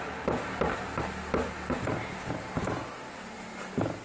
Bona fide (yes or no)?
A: yes